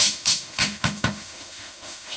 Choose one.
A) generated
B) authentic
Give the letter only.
A